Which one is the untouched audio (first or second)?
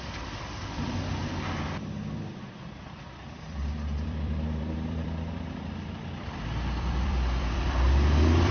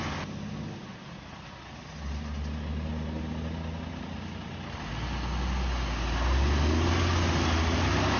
second